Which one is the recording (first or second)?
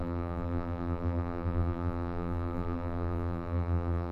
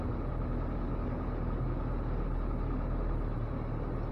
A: second